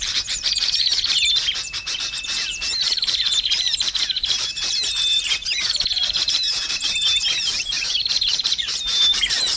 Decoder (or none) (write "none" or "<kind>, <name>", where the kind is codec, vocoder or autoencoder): vocoder, BigVGAN v2